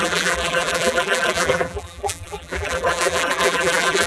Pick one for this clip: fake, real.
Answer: fake